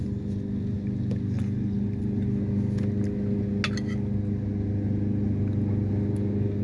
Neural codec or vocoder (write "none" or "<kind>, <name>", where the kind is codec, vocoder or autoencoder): none